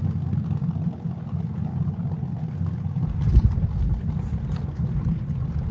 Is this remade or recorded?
recorded